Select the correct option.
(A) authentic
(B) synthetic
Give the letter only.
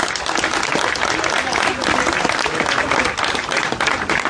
A